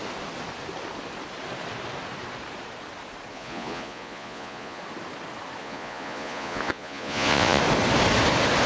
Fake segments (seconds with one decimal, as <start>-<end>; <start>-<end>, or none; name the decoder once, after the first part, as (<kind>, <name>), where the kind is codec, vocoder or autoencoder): 3.3-4.8 (vocoder, Vocos); 5.6-7.6